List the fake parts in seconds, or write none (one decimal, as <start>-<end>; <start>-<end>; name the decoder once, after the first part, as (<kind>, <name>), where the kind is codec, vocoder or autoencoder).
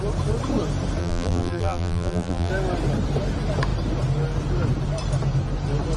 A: 1.0-2.5 (vocoder, BigVGAN v2)